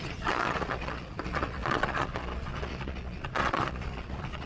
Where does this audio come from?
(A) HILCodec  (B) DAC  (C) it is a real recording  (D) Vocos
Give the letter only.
D